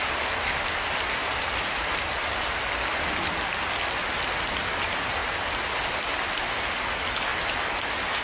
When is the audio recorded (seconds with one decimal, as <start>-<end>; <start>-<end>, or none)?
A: 0.0-1.2; 2.7-8.2